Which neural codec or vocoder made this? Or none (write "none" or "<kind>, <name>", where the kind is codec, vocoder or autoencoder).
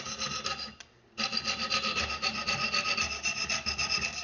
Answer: none